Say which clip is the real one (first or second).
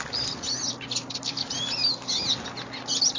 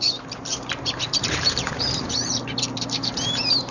first